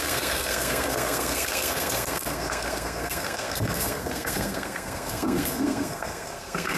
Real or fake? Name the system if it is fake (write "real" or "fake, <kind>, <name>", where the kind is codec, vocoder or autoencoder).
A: fake, codec, SNAC